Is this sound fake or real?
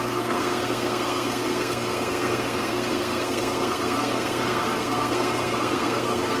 fake